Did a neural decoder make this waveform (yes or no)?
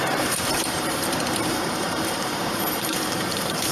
yes